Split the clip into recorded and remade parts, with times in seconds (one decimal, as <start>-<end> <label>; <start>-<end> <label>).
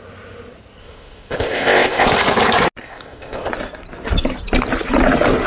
0.0-0.8 recorded; 0.8-2.1 remade; 2.1-2.8 recorded; 2.8-3.5 remade; 3.5-5.5 recorded